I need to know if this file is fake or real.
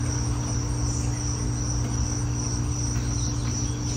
real